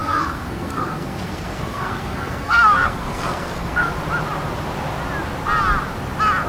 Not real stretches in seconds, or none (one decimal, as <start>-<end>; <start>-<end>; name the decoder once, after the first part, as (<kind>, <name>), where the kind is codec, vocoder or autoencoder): 0.0-3.9 (codec, SNAC)